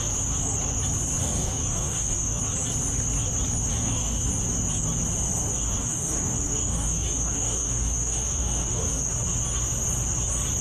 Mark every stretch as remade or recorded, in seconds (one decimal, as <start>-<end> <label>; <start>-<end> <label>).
0.0-1.2 recorded; 1.2-2.4 remade; 2.4-3.7 recorded; 3.7-4.3 remade; 4.3-5.5 recorded; 5.5-9.1 remade; 9.1-10.6 recorded